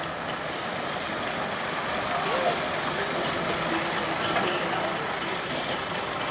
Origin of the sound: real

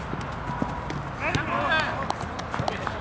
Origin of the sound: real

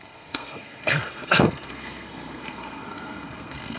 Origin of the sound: fake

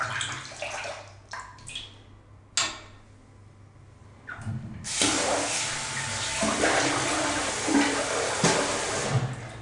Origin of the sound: real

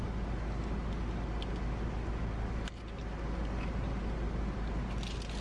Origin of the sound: real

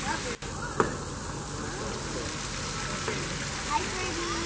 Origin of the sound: real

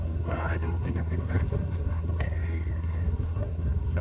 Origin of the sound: fake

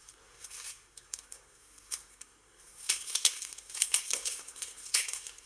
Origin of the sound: fake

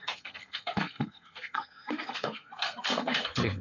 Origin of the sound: fake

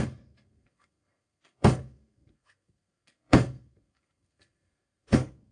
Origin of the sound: fake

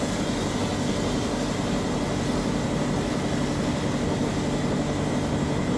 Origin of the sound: real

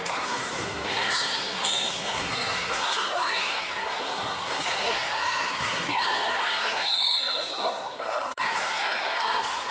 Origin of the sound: fake